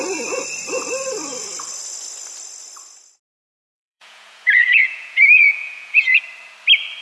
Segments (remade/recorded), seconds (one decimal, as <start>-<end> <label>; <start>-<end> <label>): 0.0-3.5 recorded; 3.5-6.2 remade; 6.2-7.0 recorded